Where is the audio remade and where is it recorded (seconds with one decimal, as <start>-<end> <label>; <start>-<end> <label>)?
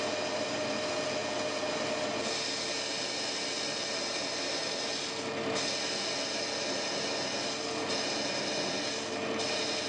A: 0.0-9.9 recorded